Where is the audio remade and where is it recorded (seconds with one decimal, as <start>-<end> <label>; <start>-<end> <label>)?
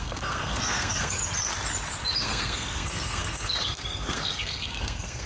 0.0-1.2 remade; 1.2-2.1 recorded; 2.1-5.3 remade